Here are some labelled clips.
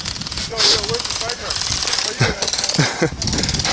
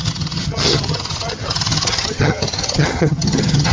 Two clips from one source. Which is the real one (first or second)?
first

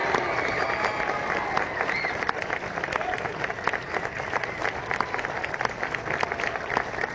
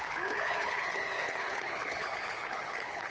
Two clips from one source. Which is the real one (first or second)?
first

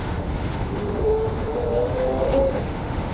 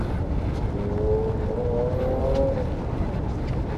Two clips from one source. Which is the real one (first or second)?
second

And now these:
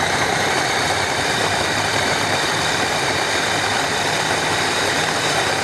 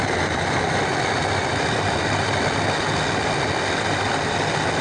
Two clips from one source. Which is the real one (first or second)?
second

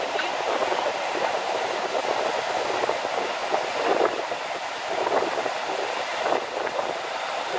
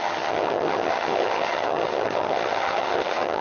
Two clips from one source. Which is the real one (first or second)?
first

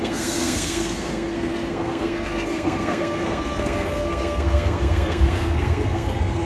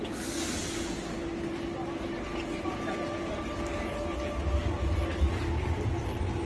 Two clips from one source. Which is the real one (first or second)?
second